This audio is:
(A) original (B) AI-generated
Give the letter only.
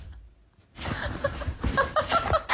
A